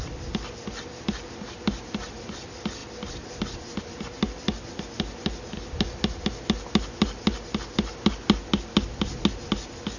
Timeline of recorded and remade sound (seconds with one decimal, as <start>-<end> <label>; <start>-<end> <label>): 0.0-10.0 recorded